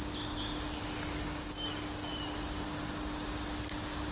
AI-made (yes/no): no